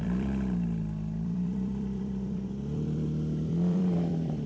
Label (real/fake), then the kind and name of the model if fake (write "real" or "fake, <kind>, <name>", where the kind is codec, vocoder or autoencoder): fake, vocoder, BigVGAN v2